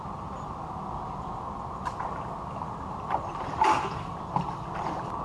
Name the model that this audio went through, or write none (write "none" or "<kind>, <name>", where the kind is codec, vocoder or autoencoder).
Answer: none